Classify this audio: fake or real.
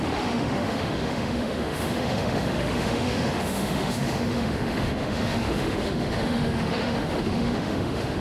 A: fake